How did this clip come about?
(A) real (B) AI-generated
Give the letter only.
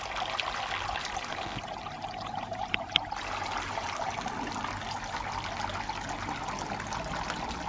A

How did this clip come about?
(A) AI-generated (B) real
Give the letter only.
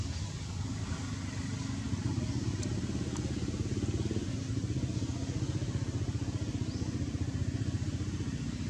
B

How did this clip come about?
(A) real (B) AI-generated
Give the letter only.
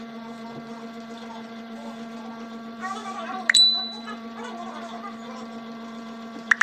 B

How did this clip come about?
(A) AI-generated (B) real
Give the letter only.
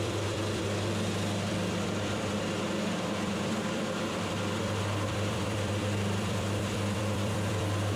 A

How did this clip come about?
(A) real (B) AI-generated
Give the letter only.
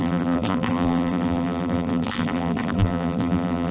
B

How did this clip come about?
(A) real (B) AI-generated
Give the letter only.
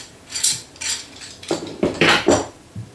B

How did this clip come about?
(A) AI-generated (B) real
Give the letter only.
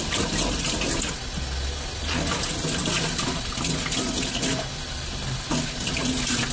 B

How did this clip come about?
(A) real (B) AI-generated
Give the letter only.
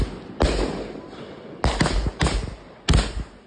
A